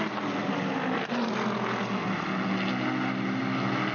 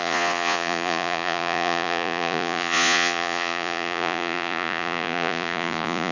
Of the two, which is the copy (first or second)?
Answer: second